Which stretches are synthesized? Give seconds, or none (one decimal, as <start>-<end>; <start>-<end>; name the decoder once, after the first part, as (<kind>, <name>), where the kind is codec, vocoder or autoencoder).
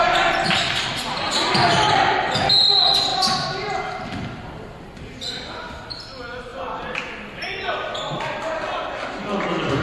none